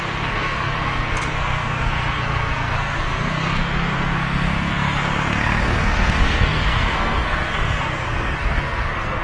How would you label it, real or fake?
fake